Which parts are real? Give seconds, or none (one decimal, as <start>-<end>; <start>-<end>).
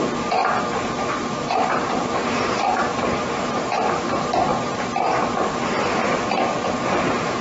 0.4-1.9; 4.5-6.9